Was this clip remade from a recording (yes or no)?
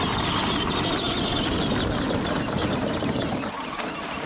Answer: no